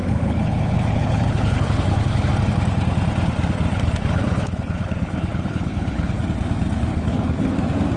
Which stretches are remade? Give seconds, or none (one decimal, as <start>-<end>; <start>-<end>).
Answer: 0.0-2.3; 3.7-6.2; 6.9-7.5